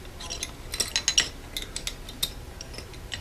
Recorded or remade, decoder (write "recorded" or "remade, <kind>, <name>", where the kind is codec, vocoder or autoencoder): recorded